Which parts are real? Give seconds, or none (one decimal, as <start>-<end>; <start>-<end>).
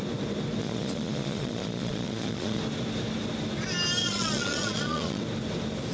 0.0-0.6; 2.6-4.0; 5.2-5.9